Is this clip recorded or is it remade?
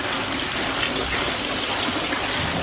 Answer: recorded